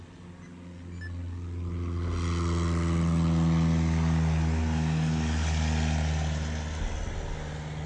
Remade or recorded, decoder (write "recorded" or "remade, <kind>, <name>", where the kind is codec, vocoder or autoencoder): recorded